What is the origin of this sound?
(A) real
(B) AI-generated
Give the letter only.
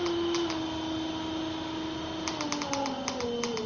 A